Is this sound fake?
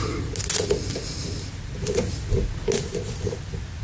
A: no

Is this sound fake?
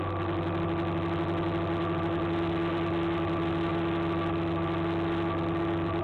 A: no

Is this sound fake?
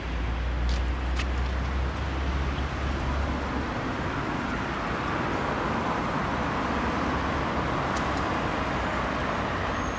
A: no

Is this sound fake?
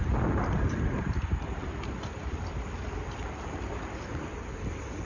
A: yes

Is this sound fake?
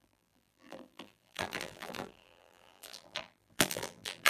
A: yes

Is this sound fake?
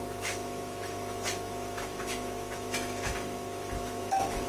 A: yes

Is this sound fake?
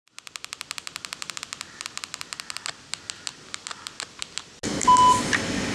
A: no